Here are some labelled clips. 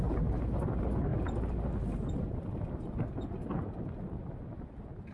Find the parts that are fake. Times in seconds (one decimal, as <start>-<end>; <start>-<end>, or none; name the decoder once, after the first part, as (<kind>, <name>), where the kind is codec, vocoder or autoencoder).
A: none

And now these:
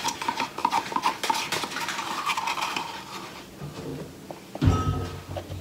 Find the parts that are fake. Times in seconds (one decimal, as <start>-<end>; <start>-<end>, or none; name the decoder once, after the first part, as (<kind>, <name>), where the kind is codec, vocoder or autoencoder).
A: none

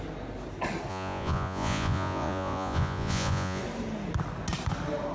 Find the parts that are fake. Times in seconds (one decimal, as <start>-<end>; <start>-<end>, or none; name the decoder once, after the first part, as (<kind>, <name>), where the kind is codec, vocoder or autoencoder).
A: 0.9-3.6 (vocoder, Vocos)

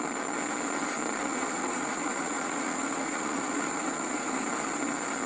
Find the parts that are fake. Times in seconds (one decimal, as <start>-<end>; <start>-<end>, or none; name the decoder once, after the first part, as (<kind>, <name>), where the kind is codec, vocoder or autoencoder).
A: 1.2-4.4 (vocoder, Vocos)